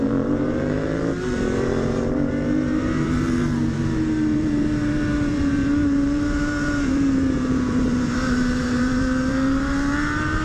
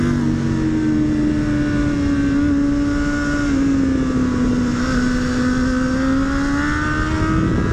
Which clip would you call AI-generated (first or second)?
first